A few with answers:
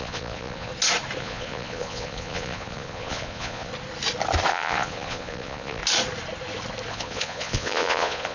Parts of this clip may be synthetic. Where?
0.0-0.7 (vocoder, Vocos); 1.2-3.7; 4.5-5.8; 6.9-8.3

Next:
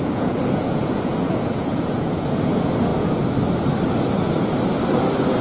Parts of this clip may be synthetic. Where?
0.0-2.9 (vocoder, Vocos)

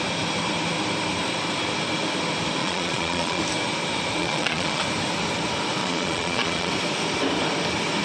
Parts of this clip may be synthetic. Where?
2.6-3.4 (vocoder, Vocos); 4.2-4.8; 5.8-6.7

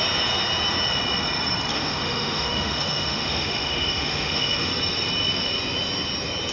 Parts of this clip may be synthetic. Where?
1.7-4.7 (autoencoder, DAC-VAE)